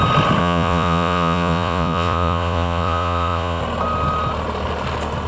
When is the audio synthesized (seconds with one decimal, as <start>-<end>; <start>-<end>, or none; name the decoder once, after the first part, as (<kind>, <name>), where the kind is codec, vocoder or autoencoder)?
0.4-3.6 (vocoder, Vocos)